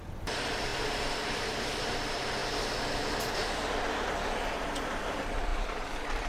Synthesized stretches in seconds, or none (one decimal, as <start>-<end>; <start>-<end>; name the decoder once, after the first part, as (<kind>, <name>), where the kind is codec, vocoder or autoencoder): 0.0-2.4 (vocoder, BigVGAN v2); 4.5-6.3